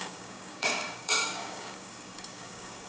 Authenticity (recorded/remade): remade